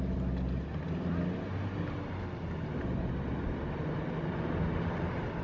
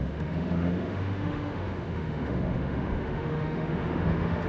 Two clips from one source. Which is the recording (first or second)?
first